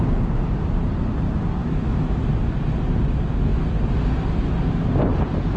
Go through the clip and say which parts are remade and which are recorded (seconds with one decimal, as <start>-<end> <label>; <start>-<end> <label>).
0.0-1.6 recorded; 1.6-2.2 remade; 2.2-5.6 recorded